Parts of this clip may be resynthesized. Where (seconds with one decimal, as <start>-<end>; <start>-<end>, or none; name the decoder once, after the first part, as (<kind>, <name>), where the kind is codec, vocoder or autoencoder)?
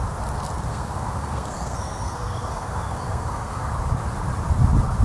0.7-3.7 (codec, SNAC)